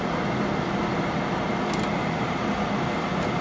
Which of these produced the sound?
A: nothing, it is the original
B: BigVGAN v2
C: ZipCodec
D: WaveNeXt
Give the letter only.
A